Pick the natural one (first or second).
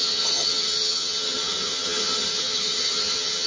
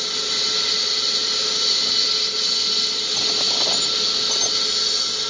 second